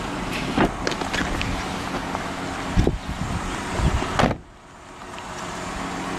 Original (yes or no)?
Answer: yes